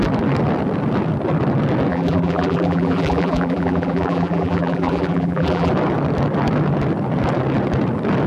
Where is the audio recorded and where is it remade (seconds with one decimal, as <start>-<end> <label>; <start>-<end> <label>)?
0.0-1.9 recorded; 1.9-5.7 remade; 5.7-8.3 recorded